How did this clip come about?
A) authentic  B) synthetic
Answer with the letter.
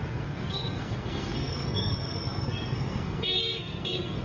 B